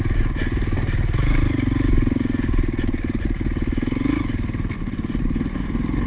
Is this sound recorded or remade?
recorded